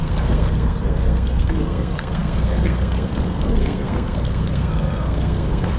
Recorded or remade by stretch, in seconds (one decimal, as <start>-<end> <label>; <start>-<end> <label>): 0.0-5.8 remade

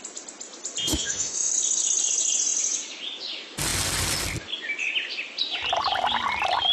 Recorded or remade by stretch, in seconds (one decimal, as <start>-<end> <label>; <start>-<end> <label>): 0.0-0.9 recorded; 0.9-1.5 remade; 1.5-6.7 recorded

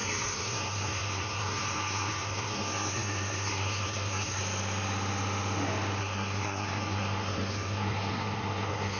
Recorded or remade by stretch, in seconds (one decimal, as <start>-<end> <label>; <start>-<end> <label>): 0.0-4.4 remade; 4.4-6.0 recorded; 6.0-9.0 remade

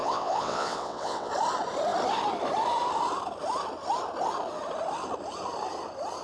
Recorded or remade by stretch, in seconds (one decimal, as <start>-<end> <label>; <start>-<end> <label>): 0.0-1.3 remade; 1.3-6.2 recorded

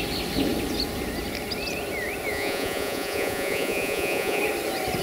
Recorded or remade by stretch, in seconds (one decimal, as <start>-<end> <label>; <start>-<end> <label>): 0.0-2.3 recorded; 2.3-4.4 remade; 4.4-5.0 recorded